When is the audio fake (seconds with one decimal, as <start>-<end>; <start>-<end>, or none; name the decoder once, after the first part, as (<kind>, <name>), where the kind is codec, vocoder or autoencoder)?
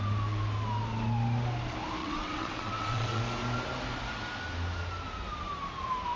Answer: 2.0-3.2 (vocoder, WaveNeXt)